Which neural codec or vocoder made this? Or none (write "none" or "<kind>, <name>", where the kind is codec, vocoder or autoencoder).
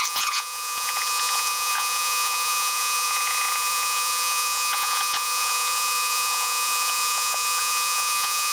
vocoder, Vocos